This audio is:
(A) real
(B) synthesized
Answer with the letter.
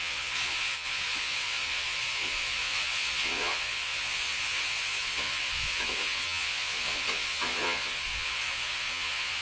B